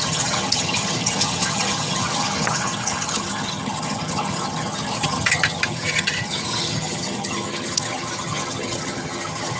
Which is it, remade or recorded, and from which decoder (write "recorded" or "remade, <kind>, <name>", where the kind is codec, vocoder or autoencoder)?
remade, vocoder, HiFi-GAN